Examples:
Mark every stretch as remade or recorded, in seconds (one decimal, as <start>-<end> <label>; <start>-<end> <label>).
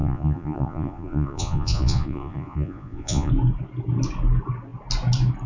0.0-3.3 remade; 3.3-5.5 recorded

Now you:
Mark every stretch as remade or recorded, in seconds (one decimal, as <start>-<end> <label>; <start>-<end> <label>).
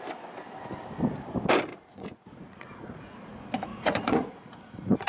0.0-1.7 recorded; 1.7-3.3 remade; 3.3-3.7 recorded; 3.7-5.1 remade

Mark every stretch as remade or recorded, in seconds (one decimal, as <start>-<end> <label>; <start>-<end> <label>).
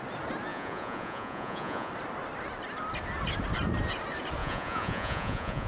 0.0-0.5 recorded; 0.5-1.9 remade; 1.9-4.4 recorded; 4.4-5.7 remade